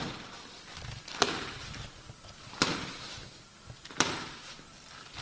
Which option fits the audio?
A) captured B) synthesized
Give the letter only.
B